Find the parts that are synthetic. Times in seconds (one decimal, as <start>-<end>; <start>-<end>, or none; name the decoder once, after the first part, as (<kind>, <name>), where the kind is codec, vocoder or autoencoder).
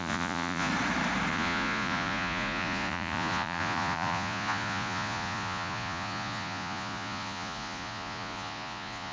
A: 0.0-0.7 (vocoder, Vocos); 1.3-9.1